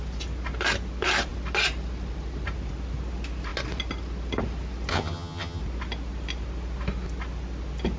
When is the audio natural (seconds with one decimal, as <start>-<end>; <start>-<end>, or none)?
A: 0.0-4.9; 5.6-8.0